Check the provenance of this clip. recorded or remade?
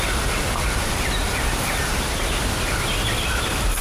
recorded